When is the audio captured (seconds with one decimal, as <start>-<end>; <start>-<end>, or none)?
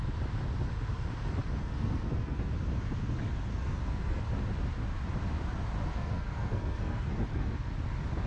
0.0-1.6; 2.5-3.5; 4.2-5.9; 7.5-8.3